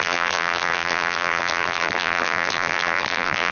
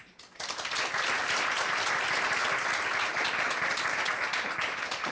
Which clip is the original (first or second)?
second